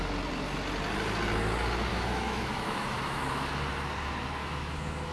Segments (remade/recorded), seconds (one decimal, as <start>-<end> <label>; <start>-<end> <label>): 0.0-1.9 recorded; 1.9-3.5 remade; 3.5-4.4 recorded; 4.4-5.1 remade